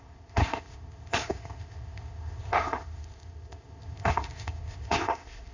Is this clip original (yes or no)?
no